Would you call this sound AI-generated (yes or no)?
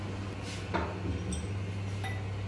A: no